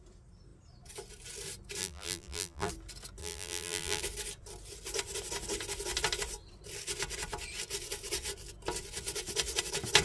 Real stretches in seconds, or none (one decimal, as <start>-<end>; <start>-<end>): 0.0-1.8; 2.7-3.2; 4.0-10.0